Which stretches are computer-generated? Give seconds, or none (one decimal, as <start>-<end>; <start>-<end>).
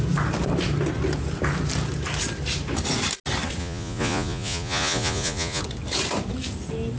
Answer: 3.6-5.6